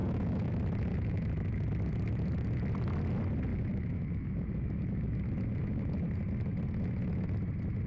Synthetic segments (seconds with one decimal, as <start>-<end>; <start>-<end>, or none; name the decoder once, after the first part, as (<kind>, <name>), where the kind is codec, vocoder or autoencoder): 0.0-0.5 (autoencoder, DAC-VAE); 0.9-1.7; 3.5-6.0